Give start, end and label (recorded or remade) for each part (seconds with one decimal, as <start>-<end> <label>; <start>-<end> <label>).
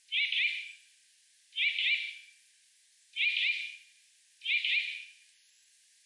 0.0-6.1 recorded